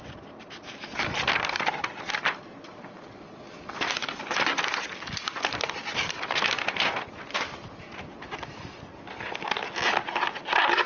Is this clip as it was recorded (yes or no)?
yes